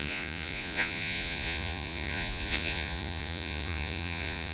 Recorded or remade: remade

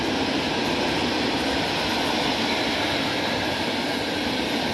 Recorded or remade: recorded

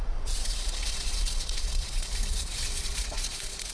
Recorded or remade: remade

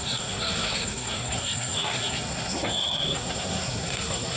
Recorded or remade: remade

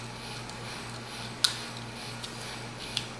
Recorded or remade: recorded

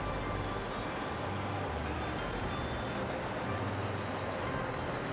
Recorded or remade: recorded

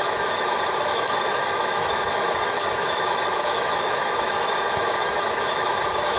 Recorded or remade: remade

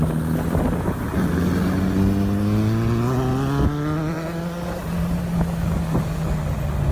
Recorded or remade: recorded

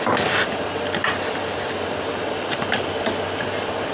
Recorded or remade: recorded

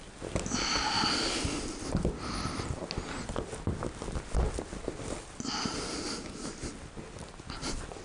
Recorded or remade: recorded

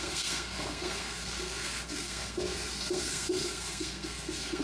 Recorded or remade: remade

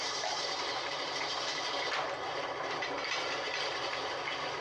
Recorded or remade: recorded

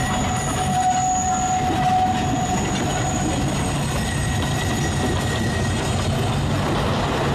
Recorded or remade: recorded